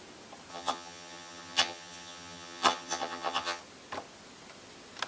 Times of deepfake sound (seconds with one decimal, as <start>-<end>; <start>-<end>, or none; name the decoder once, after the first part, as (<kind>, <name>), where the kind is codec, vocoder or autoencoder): 0.5-3.6 (vocoder, HiFi-GAN)